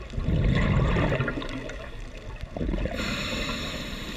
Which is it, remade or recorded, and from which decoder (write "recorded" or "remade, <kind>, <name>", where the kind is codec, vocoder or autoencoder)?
recorded